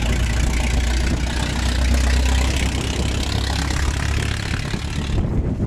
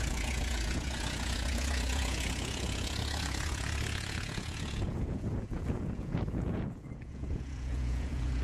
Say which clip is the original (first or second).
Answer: first